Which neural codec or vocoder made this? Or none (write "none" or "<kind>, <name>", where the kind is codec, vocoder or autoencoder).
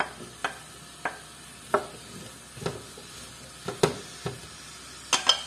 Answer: none